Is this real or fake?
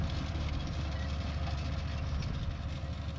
real